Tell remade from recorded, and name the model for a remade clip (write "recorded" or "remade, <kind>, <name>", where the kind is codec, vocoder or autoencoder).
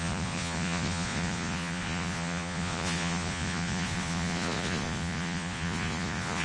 remade, vocoder, Vocos